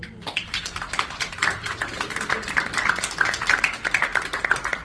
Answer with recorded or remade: recorded